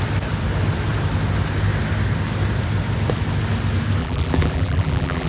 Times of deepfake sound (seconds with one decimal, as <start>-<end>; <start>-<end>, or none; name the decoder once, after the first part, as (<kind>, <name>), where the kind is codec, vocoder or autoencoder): 4.0-5.3 (vocoder, BigVGAN v2)